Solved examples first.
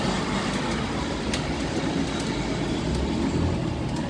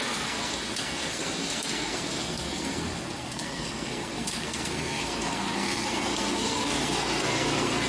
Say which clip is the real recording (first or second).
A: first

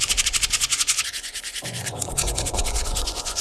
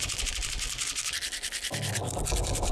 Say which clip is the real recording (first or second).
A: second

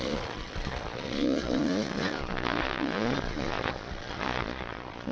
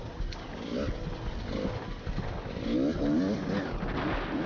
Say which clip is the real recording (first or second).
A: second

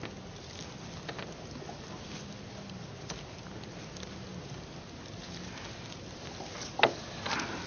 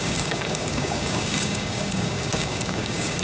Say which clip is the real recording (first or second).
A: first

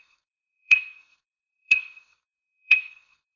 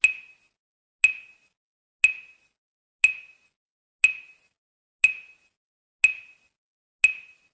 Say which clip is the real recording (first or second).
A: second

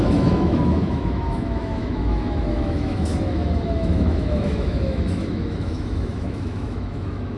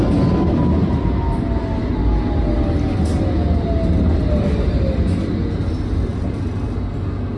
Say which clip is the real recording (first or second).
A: second